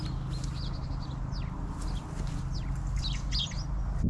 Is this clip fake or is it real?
real